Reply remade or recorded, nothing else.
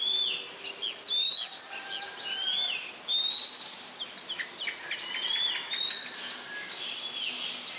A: recorded